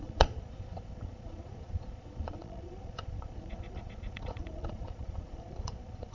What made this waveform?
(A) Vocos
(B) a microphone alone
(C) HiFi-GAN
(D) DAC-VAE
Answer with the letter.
A